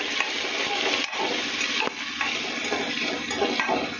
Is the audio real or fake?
real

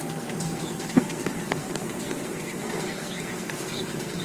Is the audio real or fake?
fake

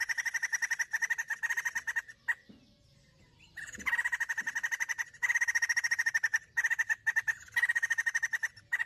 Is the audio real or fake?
real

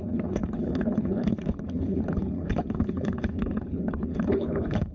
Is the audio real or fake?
fake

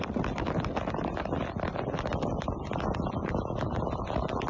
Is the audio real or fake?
real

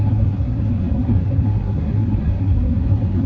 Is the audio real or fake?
fake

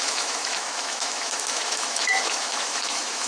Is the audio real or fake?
fake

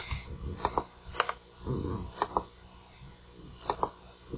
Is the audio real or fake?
real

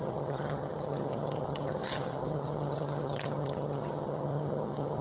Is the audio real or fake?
fake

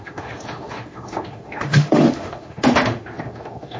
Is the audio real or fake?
fake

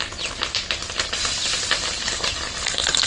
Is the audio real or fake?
real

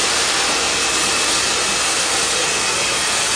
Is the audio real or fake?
real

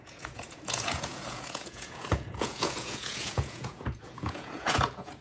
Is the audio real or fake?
fake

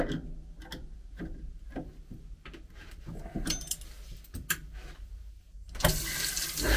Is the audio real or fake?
real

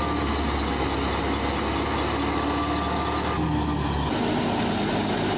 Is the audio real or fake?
real